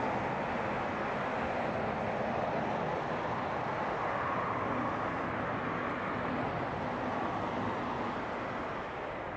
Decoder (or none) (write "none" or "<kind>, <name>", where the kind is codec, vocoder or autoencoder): none